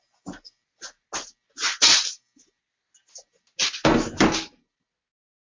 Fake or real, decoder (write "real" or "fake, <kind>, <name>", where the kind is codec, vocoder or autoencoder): real